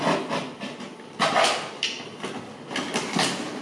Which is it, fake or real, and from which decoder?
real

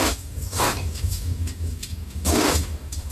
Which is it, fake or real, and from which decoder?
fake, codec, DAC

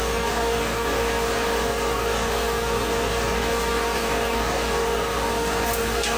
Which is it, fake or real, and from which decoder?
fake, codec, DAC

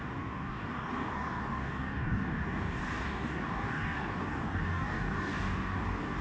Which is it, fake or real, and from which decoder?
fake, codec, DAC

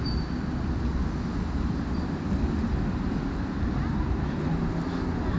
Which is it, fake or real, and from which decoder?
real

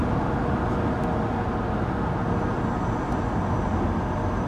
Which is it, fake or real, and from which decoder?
real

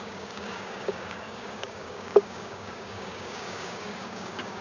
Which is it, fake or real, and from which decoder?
fake, codec, DAC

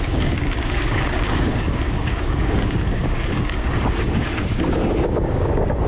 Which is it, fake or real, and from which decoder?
fake, codec, DAC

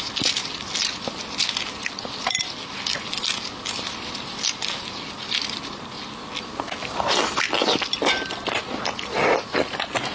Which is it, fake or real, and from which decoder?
real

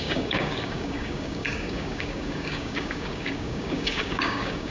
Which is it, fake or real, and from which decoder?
fake, codec, DAC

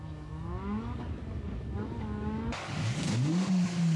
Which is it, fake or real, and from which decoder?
fake, codec, DAC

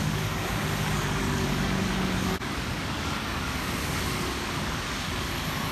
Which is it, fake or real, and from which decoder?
fake, codec, DAC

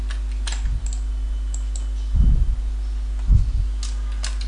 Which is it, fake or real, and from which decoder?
real